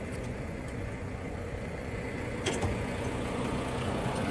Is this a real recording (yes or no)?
no